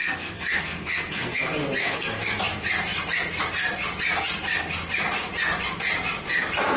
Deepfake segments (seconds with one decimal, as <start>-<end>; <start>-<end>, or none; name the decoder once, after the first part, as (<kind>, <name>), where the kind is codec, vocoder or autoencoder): 0.0-1.4 (codec, SNAC); 1.8-2.4